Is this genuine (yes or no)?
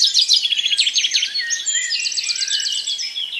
yes